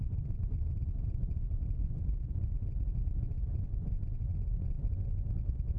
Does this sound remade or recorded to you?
remade